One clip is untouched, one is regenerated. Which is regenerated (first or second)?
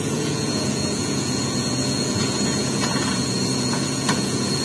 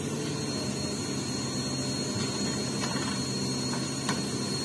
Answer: first